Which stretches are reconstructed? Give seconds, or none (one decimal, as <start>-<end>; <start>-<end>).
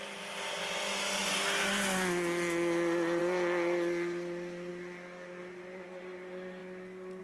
none